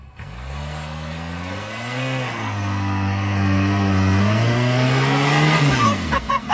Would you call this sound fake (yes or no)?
yes